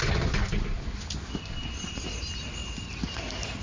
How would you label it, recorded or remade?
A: recorded